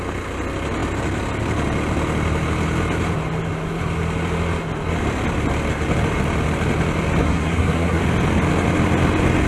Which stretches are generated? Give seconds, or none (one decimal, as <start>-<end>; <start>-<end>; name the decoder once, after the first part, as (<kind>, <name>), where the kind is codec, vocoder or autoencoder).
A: 7.2-8.0 (codec, SNAC)

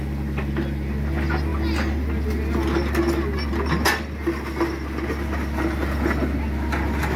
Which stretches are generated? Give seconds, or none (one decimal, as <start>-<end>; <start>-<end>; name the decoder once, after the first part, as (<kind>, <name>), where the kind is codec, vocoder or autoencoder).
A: none